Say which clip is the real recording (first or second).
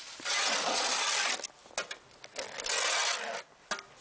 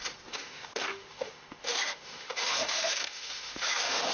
first